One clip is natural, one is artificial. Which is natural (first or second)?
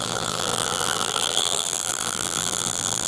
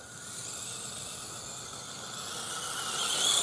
second